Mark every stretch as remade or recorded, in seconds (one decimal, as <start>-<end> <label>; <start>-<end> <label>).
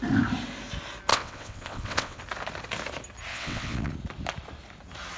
0.0-1.1 recorded; 1.1-2.2 remade; 2.2-3.3 recorded; 3.3-3.9 remade; 3.9-5.2 recorded